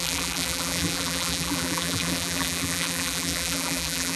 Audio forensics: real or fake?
fake